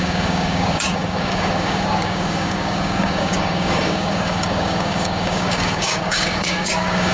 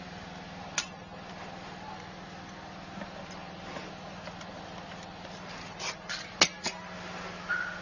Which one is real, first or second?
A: second